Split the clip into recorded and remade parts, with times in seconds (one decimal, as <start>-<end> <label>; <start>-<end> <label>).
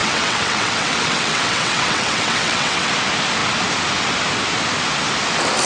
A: 0.0-2.9 remade; 2.9-5.7 recorded